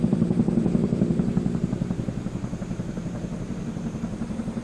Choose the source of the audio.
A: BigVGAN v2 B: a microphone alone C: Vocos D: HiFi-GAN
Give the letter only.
A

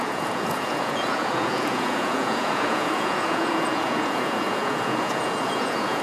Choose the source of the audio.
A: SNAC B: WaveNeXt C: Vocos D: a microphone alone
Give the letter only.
C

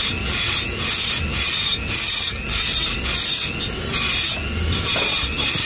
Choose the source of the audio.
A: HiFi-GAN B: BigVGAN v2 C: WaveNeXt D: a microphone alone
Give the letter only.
D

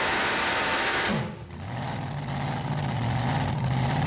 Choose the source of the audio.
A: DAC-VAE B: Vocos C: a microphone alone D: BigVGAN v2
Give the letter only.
D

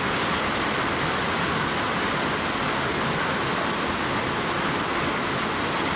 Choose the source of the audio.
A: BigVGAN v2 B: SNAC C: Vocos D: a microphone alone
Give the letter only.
D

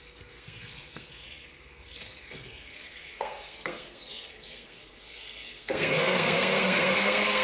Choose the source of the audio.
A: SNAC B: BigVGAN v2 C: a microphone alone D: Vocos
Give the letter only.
A